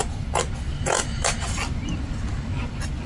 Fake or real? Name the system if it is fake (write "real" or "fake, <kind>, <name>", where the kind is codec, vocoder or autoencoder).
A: real